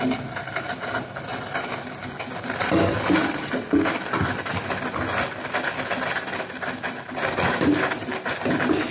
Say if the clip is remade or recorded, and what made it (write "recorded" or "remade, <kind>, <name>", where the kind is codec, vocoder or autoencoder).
recorded